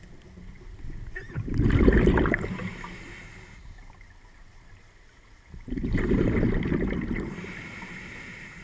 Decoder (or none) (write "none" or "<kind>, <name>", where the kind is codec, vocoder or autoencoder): none